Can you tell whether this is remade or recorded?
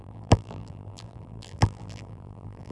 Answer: remade